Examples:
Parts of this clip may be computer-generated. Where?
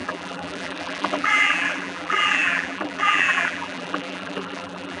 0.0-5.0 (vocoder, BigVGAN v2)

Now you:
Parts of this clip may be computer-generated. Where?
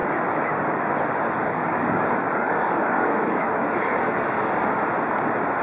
0.0-0.9 (codec, DAC); 1.4-4.8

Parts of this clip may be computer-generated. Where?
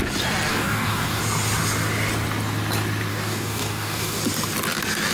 0.5-1.2 (codec, DAC); 3.1-4.2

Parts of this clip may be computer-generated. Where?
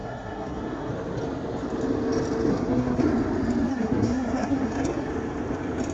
0.0-0.9 (codec, SNAC); 2.5-3.0; 3.7-5.1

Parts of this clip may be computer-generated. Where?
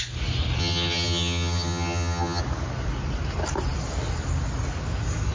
0.6-2.4 (vocoder, HiFi-GAN)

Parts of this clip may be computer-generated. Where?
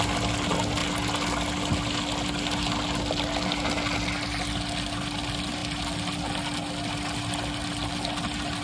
none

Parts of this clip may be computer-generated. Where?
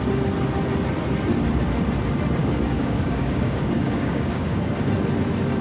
2.4-4.7 (codec, DAC)